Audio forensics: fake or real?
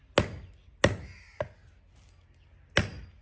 real